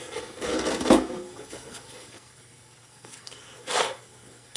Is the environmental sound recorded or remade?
remade